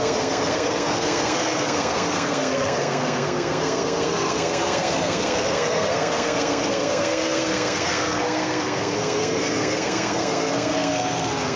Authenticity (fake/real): fake